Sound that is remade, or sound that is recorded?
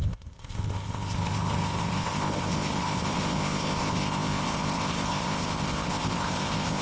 remade